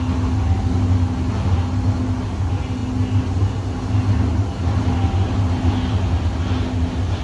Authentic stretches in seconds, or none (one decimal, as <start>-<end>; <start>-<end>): 0.0-7.2